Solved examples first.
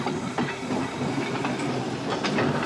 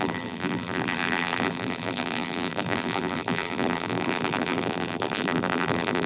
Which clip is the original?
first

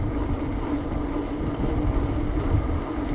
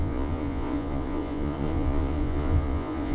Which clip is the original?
first